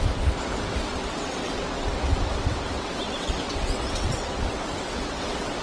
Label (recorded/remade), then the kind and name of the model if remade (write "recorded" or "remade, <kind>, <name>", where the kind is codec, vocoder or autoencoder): remade, vocoder, WaveNeXt